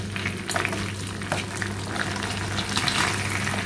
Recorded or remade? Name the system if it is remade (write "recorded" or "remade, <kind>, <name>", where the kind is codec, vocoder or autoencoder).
recorded